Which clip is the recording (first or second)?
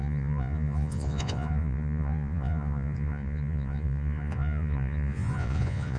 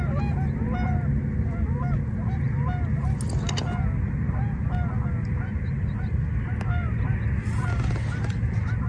second